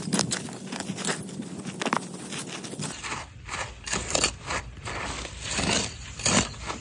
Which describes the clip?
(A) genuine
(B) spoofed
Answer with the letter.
A